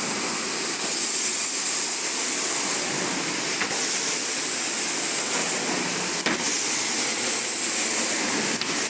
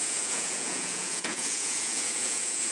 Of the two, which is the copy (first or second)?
second